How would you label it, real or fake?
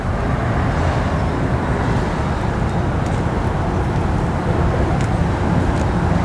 real